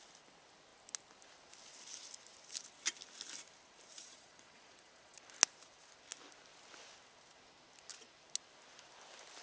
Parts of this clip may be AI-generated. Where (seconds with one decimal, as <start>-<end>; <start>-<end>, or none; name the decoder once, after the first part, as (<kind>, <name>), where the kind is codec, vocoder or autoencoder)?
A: 4.0-5.2 (vocoder, Vocos)